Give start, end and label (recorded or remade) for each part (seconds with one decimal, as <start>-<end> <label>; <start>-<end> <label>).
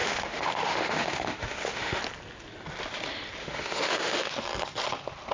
0.0-2.0 remade; 2.0-3.4 recorded; 3.4-4.3 remade; 4.3-5.3 recorded